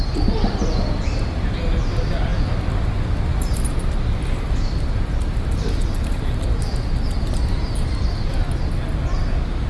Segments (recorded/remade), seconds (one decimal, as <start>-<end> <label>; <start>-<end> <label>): 0.0-9.7 recorded